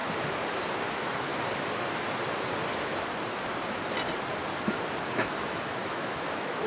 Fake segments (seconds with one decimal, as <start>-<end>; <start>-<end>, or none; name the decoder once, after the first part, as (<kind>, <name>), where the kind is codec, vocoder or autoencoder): 0.8-1.3 (autoencoder, DAC-VAE); 5.1-6.7